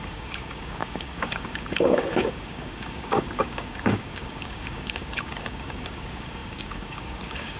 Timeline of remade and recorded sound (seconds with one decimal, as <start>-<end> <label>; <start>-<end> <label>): 0.0-7.6 remade